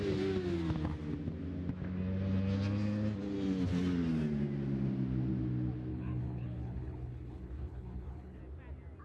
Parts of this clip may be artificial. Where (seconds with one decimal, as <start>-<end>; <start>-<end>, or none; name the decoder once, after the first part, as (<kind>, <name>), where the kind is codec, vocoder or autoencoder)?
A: 5.9-8.4 (codec, HILCodec)